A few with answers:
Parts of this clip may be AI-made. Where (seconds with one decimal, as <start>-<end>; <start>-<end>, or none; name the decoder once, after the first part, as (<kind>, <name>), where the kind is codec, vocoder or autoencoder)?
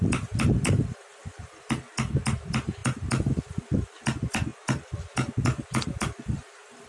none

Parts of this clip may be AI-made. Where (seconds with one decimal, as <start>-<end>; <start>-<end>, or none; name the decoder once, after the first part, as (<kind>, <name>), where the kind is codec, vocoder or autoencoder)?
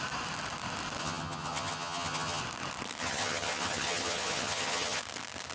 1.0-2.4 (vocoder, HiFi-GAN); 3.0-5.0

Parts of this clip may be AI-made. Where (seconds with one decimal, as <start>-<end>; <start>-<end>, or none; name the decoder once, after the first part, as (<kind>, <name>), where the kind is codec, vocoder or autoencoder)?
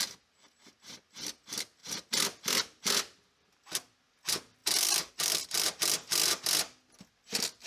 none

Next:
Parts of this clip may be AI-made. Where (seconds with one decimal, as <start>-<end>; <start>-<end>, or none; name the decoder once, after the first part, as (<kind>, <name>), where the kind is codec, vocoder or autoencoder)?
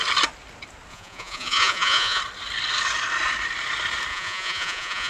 0.9-2.2 (vocoder, Vocos); 4.1-5.1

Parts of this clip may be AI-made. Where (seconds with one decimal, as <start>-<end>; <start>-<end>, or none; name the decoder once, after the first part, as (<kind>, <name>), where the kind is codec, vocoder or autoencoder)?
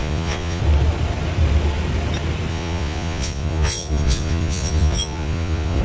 0.0-0.6 (vocoder, Vocos); 2.5-5.8